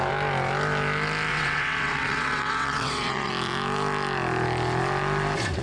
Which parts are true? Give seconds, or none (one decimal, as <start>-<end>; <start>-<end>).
0.0-1.3; 3.3-5.6